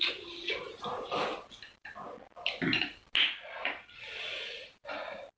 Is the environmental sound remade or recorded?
recorded